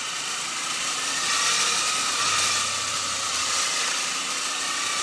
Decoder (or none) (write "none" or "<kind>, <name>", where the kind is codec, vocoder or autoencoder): vocoder, BigVGAN v2